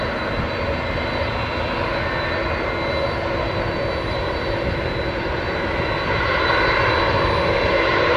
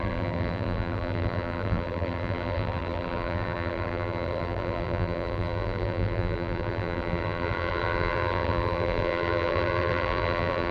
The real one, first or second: first